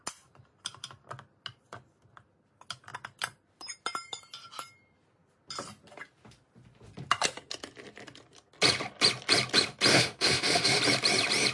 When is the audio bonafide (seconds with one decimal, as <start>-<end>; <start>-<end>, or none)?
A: 0.0-9.9; 10.8-11.5